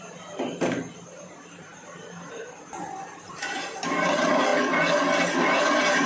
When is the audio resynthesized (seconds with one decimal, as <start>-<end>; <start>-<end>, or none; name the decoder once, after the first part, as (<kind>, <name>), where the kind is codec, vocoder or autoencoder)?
0.0-4.5 (vocoder, BigVGAN v2); 5.2-6.1